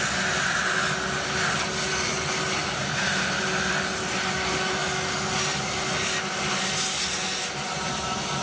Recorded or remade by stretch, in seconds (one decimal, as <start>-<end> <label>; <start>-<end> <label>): 0.0-8.4 recorded